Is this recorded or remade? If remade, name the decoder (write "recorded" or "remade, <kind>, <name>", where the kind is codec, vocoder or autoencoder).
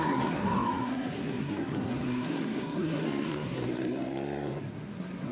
remade, codec, SNAC